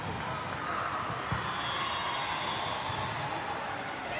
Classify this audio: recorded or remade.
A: recorded